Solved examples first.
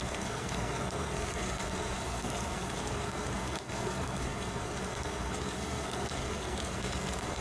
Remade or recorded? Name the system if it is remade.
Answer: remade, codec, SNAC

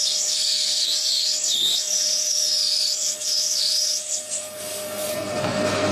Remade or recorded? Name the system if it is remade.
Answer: remade, codec, SNAC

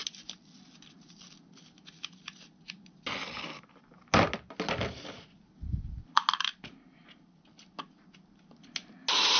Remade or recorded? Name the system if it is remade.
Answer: recorded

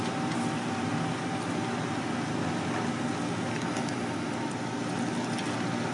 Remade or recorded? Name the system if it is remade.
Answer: recorded